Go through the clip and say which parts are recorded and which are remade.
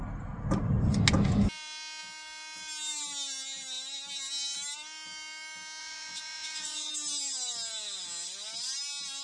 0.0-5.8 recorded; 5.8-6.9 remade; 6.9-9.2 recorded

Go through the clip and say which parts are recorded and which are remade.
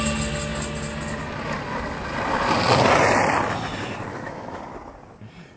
0.0-4.1 recorded; 4.1-4.6 remade; 4.6-5.6 recorded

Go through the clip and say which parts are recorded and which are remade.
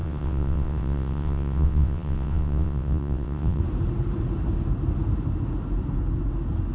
0.0-3.6 remade; 3.6-6.7 recorded